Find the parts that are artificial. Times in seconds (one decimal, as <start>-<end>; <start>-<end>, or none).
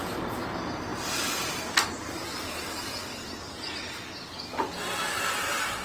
none